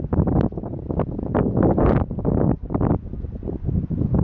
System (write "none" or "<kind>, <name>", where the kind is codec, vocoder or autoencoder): none